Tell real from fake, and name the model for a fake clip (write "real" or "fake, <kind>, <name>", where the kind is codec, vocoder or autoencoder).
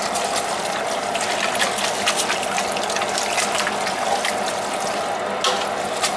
real